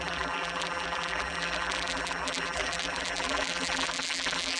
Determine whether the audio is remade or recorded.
remade